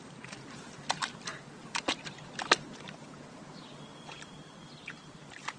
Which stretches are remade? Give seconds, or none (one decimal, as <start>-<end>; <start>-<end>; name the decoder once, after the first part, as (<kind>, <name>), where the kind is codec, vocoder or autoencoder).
none